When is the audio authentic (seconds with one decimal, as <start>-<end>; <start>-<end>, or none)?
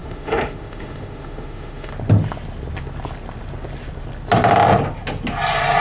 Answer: 1.9-5.8